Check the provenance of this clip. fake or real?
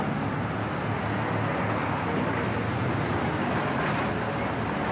real